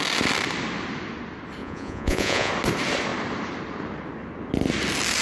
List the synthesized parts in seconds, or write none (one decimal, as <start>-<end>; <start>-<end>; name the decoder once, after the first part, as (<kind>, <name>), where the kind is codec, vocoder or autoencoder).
1.6-2.5 (vocoder, Vocos)